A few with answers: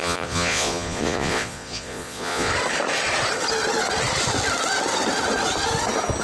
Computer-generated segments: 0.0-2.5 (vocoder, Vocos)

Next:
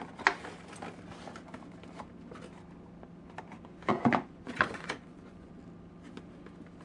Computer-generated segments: 3.9-5.5 (vocoder, Vocos)

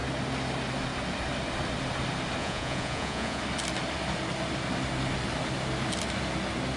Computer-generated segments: 2.4-3.4 (vocoder, Vocos)

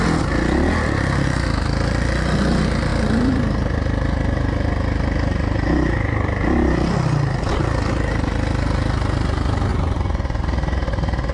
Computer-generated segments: 9.7-10.4 (vocoder, Vocos)

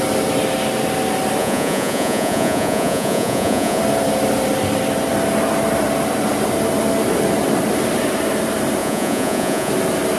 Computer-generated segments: 1.4-3.8 (vocoder, Vocos); 8.8-9.7